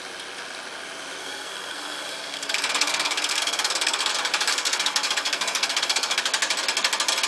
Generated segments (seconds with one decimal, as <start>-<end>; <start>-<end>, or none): 1.2-4.1; 4.5-6.2

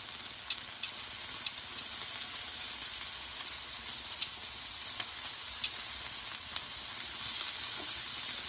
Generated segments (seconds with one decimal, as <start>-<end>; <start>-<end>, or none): none

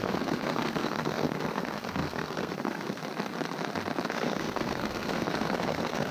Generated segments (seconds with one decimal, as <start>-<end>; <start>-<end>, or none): 0.0-3.0; 4.1-6.1

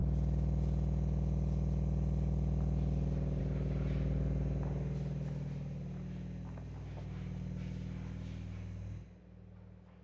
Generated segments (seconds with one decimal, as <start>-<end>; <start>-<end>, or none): none